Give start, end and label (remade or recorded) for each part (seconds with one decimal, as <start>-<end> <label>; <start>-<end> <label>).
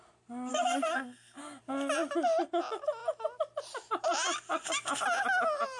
0.0-0.5 recorded; 0.5-1.6 remade; 1.6-5.8 recorded